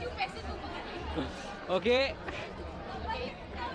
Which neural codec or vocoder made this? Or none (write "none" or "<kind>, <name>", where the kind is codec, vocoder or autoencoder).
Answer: vocoder, BigVGAN v2